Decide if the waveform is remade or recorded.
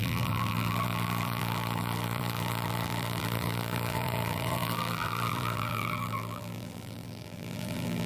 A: remade